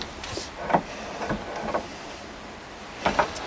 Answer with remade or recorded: remade